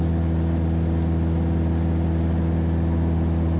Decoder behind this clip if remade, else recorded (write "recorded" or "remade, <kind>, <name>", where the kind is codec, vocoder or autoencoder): recorded